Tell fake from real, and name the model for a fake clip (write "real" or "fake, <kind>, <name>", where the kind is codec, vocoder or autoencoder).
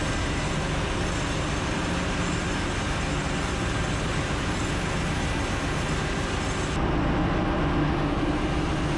real